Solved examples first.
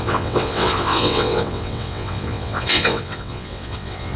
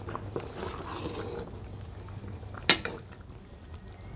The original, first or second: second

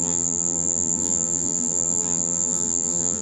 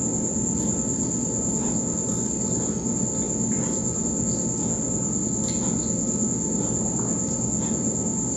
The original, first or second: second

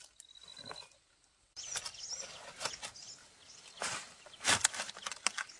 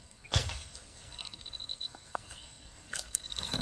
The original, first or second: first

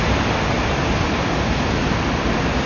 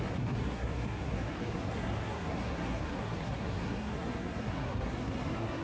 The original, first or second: first